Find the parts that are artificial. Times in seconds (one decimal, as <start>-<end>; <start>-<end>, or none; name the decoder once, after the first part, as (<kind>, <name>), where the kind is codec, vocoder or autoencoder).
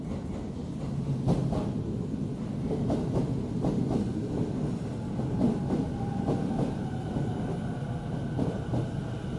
none